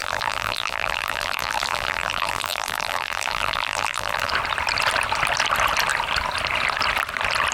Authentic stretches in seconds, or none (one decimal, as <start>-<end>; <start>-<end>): 4.3-7.5

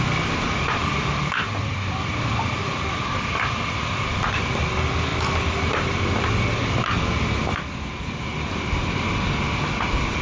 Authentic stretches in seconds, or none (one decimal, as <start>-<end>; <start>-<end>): 0.0-0.8; 4.2-5.1; 7.9-10.2

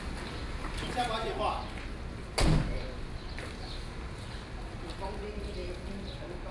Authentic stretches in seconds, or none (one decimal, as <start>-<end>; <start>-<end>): 0.0-6.5